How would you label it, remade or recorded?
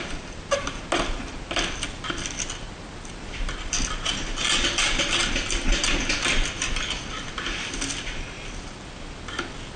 recorded